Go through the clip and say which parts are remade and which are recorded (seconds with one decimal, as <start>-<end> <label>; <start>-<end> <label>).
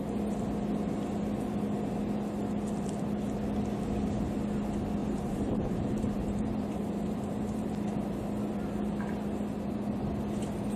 0.0-5.0 recorded; 5.0-7.7 remade; 7.7-10.8 recorded